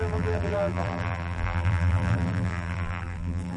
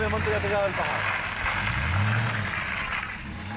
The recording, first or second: second